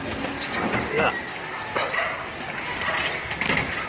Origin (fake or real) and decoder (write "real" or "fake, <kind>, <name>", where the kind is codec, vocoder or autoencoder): real